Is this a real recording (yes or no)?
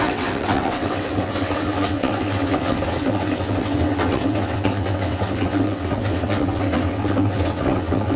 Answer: no